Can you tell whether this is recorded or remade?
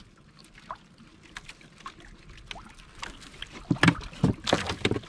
recorded